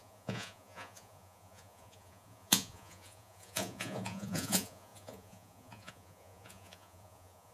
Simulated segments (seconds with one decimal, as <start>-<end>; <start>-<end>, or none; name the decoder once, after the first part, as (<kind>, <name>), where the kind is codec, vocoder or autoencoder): 0.0-7.5 (vocoder, Vocos)